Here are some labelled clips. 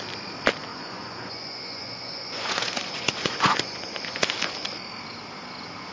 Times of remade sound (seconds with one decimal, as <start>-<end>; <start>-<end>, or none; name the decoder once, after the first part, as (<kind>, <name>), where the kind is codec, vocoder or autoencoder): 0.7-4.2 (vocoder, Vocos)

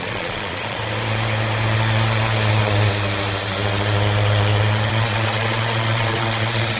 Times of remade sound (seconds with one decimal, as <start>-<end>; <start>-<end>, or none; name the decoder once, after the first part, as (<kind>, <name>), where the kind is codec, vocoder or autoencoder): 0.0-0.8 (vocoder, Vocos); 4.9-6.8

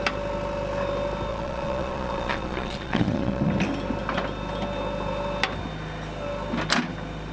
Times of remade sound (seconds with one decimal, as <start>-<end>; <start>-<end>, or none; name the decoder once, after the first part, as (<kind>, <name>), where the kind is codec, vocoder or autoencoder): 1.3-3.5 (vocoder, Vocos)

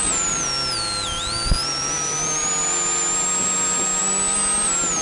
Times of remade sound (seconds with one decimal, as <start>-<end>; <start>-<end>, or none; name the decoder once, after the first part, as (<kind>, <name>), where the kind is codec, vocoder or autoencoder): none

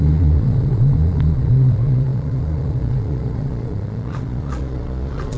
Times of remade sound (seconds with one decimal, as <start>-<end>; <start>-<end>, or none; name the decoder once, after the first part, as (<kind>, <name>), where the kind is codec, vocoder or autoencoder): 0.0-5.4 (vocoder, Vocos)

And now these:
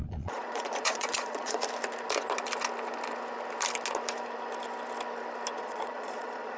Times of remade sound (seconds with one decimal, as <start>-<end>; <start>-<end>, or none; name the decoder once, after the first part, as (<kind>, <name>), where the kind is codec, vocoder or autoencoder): 0.0-1.6 (vocoder, Vocos); 5.6-6.6